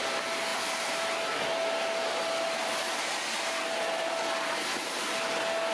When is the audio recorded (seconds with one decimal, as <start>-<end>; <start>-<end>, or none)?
0.0-5.7